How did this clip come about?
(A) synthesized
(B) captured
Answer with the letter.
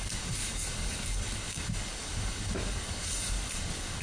A